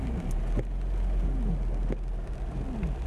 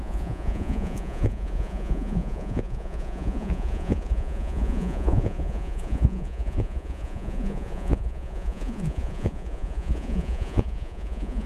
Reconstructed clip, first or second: second